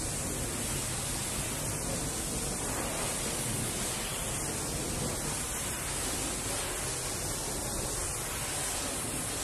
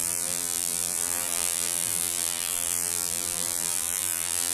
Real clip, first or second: first